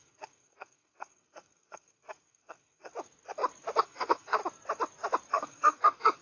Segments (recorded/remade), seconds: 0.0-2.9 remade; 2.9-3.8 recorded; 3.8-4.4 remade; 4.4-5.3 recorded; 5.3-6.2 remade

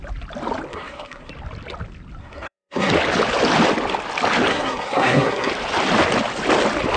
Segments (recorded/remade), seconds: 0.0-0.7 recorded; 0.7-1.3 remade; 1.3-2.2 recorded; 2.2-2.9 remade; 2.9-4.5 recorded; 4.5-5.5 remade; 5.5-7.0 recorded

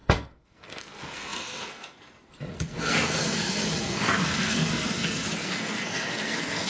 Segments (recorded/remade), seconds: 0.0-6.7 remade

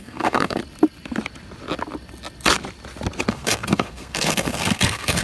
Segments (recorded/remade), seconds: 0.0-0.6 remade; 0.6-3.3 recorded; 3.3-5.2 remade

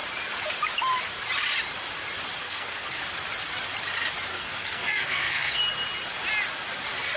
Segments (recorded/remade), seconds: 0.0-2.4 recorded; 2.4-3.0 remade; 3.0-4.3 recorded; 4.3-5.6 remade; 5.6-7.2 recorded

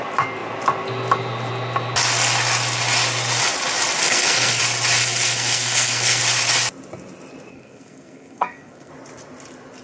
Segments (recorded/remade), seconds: 0.0-4.0 recorded; 4.0-4.6 remade; 4.6-5.0 recorded; 5.0-6.2 remade; 6.2-7.5 recorded; 7.5-8.9 remade; 8.9-9.8 recorded